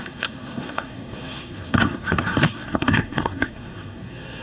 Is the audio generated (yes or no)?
yes